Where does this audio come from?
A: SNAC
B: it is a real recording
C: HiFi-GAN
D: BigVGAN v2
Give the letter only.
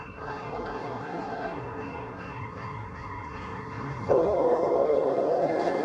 A